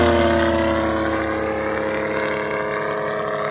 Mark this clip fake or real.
real